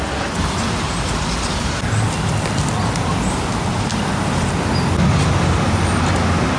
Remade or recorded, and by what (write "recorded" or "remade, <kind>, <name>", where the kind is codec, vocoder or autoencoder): recorded